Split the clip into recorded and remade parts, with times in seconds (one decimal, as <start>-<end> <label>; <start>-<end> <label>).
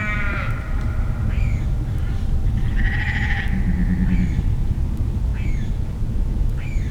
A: 0.0-5.3 recorded; 5.3-6.5 remade; 6.5-6.9 recorded